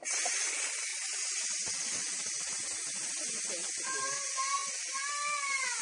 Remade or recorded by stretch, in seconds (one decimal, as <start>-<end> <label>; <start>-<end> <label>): 0.0-5.8 recorded